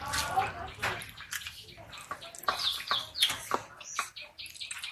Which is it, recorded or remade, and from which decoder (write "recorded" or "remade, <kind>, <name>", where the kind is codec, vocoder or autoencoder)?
recorded